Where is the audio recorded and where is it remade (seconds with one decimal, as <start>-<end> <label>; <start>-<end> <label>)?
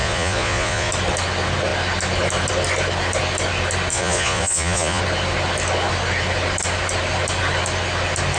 0.0-0.9 remade; 0.9-3.9 recorded; 3.9-5.0 remade; 5.0-8.4 recorded